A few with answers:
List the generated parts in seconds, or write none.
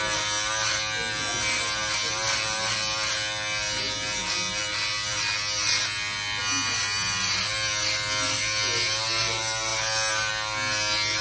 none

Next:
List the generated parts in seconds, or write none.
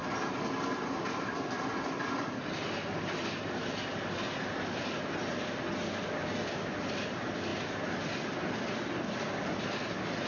none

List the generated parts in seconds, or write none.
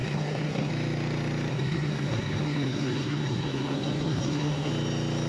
0.0-0.7; 1.5-4.7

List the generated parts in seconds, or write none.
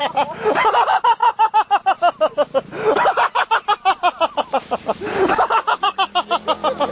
0.0-1.2; 4.4-6.9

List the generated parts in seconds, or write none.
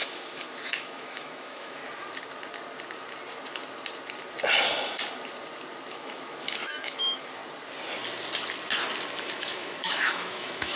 0.0-1.8; 5.9-7.4; 9.2-10.8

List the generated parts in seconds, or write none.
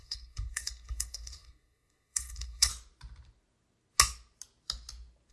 0.0-2.7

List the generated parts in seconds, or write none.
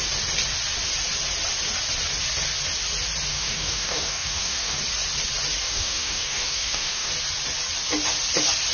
3.3-4.8; 5.6-7.1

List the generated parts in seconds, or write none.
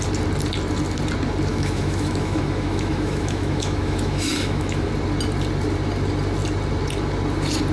1.5-4.9